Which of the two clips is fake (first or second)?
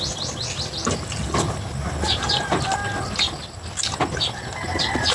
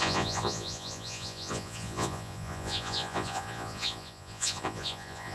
second